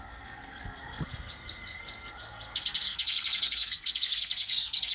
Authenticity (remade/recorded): remade